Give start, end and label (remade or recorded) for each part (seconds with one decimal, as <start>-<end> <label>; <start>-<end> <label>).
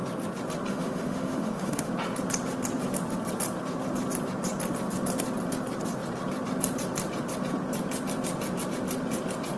0.0-0.7 recorded; 0.7-1.9 remade; 1.9-9.6 recorded